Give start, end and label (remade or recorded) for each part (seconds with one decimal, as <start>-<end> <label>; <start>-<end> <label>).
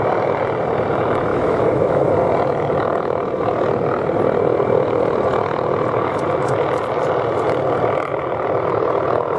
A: 0.0-1.3 recorded; 1.3-2.1 remade; 2.1-9.4 recorded